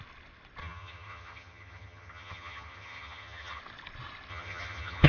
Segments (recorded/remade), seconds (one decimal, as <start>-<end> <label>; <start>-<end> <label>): 0.0-0.6 recorded; 0.6-3.6 remade; 3.6-4.3 recorded; 4.3-5.1 remade